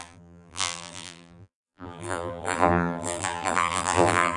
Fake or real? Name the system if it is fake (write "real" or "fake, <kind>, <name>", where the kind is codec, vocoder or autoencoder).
fake, vocoder, BigVGAN v2